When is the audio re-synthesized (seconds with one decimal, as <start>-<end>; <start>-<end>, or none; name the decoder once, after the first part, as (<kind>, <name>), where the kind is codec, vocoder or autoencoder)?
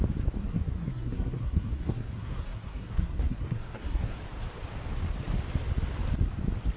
0.4-4.2 (codec, SNAC)